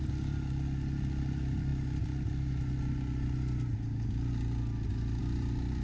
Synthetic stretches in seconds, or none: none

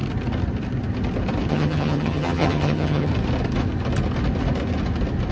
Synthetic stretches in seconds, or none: 1.5-3.1 (vocoder, HiFi-GAN)

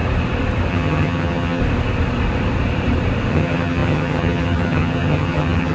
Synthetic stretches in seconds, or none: 0.7-1.6 (vocoder, HiFi-GAN); 3.3-5.7

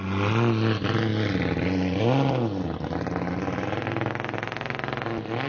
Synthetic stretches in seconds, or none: none

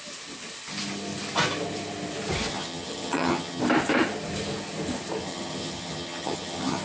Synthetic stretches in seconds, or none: 2.5-3.6 (vocoder, HiFi-GAN); 5.2-6.8